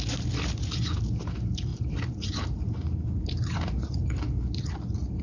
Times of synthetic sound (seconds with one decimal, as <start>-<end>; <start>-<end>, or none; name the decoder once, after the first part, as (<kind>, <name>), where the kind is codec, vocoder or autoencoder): 1.7-4.7 (vocoder, BigVGAN v2)